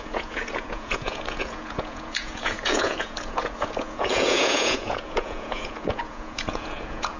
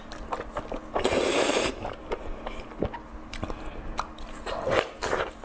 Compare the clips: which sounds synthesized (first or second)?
first